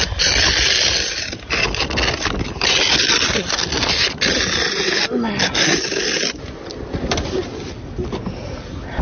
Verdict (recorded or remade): recorded